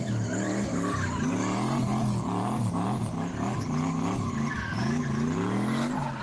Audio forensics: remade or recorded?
recorded